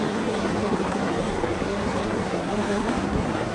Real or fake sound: fake